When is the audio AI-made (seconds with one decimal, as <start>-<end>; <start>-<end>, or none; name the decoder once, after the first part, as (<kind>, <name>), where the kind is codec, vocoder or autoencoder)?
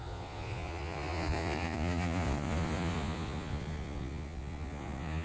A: 0.0-5.2 (vocoder, Vocos)